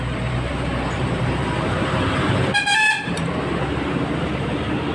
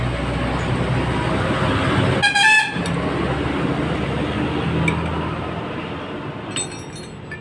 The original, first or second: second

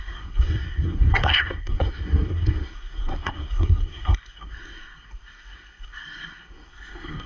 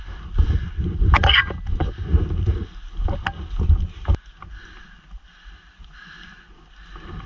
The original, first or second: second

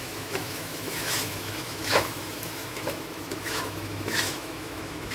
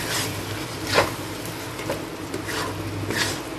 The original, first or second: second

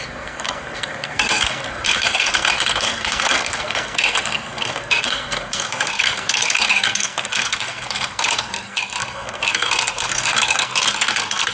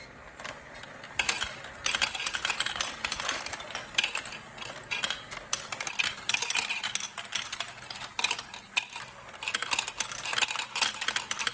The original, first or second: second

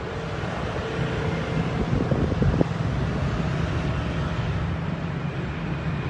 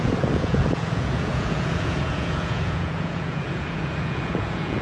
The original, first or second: first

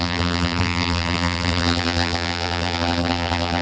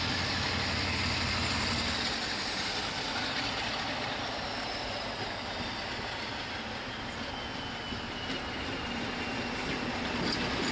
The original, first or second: second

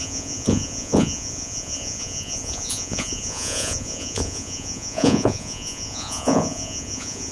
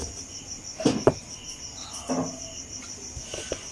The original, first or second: second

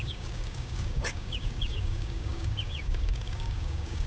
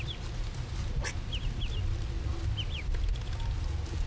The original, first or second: second